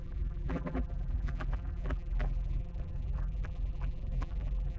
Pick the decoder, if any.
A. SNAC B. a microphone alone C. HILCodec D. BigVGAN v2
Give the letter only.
D